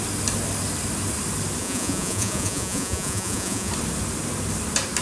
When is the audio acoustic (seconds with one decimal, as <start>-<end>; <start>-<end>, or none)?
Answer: 0.0-1.6; 3.7-5.0